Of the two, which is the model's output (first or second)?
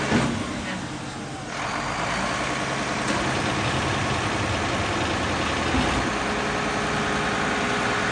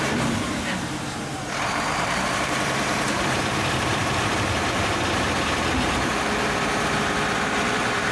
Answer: second